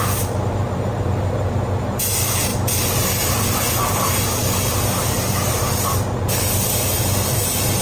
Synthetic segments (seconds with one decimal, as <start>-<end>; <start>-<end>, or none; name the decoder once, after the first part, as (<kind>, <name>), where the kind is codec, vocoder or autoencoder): 0.0-7.8 (vocoder, BigVGAN v2)